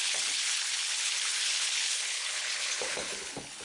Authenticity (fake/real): fake